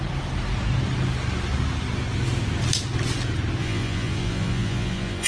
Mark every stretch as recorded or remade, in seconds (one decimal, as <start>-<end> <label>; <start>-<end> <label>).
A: 0.0-3.6 recorded; 3.6-5.3 remade